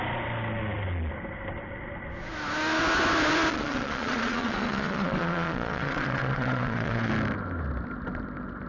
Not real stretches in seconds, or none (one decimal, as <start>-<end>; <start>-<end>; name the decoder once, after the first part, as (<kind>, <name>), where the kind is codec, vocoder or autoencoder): 3.5-7.1 (vocoder, Vocos)